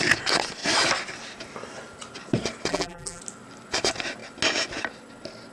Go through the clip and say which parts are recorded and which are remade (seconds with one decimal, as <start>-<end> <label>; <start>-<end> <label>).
0.0-2.7 recorded; 2.7-3.2 remade; 3.2-5.5 recorded